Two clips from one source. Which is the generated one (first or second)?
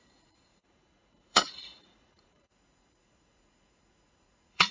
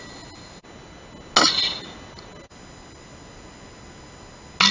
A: first